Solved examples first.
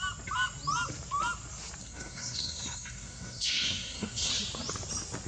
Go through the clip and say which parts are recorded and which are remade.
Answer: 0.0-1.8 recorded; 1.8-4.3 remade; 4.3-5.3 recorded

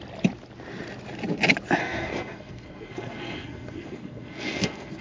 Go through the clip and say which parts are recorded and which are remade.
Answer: 0.0-1.8 recorded; 1.8-5.0 remade